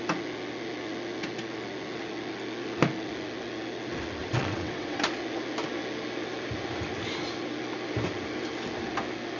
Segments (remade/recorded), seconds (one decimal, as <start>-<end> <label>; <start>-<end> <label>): 0.0-4.2 recorded; 4.2-5.0 remade; 5.0-9.4 recorded